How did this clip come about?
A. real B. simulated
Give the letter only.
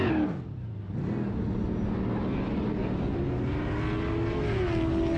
A